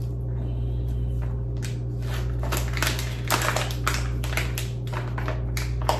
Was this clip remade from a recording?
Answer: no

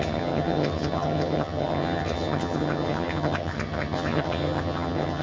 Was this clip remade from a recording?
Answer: yes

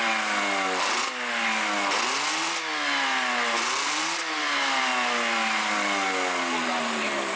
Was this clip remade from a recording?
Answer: no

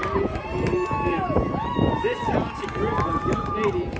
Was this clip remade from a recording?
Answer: no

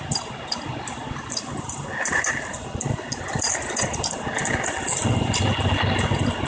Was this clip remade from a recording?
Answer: no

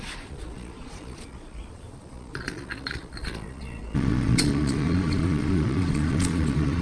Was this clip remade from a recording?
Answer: yes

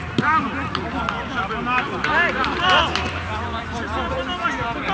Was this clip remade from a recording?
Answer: yes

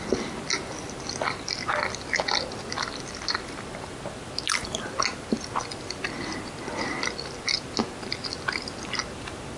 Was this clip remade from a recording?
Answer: no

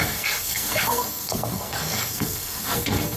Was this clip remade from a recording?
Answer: yes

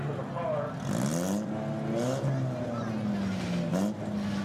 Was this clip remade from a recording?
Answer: no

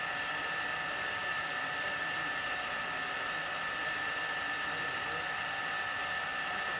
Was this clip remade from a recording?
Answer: no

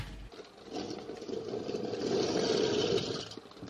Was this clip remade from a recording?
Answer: no